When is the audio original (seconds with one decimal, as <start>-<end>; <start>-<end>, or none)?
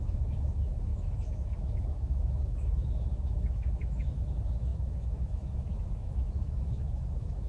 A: none